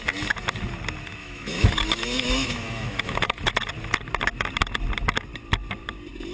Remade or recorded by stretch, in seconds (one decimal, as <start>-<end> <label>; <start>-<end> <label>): 0.0-1.2 recorded; 1.2-3.5 remade; 3.5-6.3 recorded